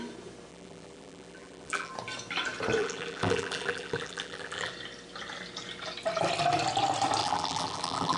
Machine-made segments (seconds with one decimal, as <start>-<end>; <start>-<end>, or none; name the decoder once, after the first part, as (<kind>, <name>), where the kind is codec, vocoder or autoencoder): 0.5-1.9 (vocoder, BigVGAN v2); 2.8-4.7; 7.2-8.2